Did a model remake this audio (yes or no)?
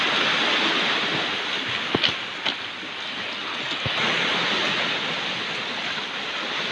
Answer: no